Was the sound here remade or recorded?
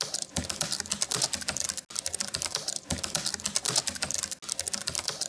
recorded